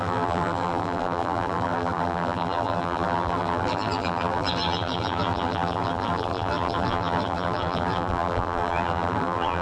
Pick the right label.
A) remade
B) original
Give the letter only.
A